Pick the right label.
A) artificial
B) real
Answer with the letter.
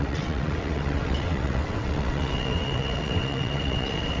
A